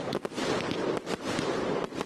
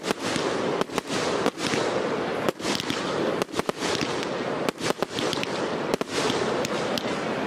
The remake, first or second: first